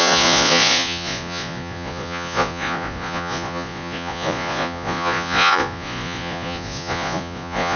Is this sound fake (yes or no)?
yes